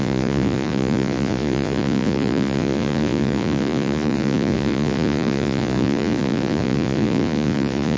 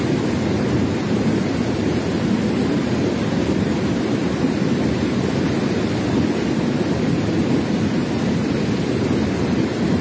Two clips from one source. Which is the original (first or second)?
second